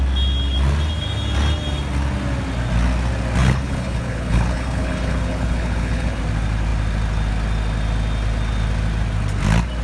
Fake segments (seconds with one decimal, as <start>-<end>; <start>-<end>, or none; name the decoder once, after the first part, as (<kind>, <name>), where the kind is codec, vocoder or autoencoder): 3.4-6.2 (codec, HILCodec)